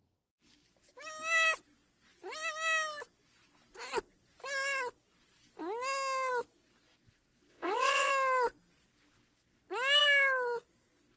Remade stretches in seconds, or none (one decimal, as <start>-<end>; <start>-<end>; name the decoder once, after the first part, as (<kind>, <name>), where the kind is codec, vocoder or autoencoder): 7.5-8.1 (vocoder, WaveNeXt)